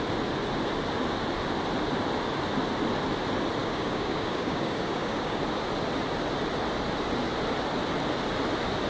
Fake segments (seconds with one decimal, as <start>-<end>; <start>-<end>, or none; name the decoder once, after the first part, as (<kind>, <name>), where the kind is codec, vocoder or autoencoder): 3.6-5.4 (codec, DAC)

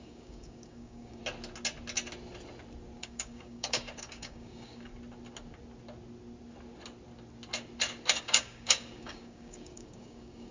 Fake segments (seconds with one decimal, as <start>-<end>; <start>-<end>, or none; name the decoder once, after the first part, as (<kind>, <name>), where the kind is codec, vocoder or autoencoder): 0.0-1.2 (codec, DAC); 3.0-4.9; 8.2-10.5

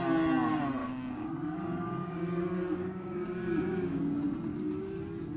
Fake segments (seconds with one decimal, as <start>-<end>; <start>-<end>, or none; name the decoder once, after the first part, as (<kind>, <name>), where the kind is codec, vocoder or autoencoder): 0.8-4.0 (codec, DAC); 4.5-5.0

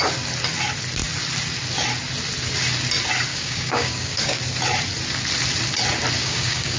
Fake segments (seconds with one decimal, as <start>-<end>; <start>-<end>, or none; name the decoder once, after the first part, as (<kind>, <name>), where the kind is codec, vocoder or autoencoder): 3.3-4.4 (codec, DAC); 6.2-6.8

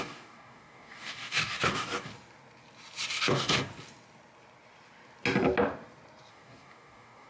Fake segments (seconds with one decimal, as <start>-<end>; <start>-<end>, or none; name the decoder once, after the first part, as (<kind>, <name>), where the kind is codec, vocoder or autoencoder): 0.0-2.1 (codec, DAC); 3.2-3.7; 6.3-7.3

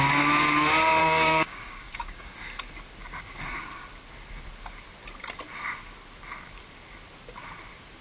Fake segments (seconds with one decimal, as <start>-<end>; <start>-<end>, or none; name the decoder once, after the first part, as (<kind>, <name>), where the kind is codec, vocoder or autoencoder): 1.0-2.3 (codec, DAC)

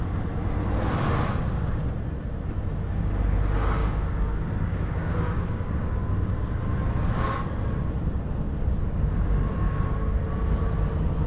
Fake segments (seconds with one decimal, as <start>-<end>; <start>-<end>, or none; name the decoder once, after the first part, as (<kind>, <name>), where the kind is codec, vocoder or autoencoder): 3.8-6.5 (codec, DAC); 9.5-10.1

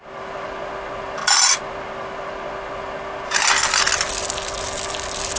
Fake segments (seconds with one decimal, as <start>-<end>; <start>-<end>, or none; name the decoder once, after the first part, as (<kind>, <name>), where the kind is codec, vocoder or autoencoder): none